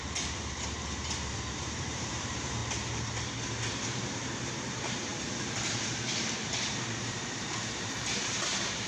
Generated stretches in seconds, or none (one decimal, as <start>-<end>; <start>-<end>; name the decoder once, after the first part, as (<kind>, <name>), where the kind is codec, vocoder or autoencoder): 0.0-2.6 (vocoder, BigVGAN v2); 3.7-5.1; 5.7-8.9